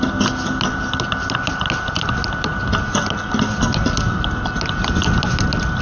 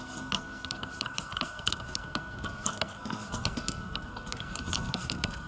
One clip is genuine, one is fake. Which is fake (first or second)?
second